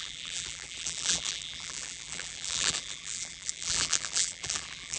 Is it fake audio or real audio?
fake